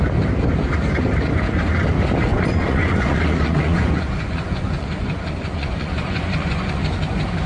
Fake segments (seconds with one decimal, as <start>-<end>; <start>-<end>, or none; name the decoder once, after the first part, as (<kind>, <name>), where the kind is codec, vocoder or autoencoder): 2.3-6.8 (vocoder, Vocos)